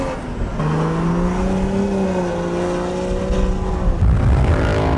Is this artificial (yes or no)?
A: no